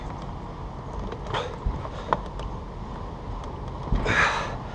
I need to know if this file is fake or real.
real